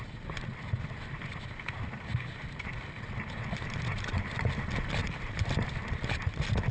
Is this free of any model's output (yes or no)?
yes